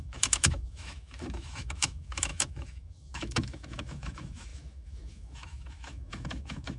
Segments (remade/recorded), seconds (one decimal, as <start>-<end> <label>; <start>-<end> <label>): 0.0-6.8 remade